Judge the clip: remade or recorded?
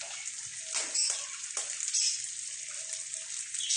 recorded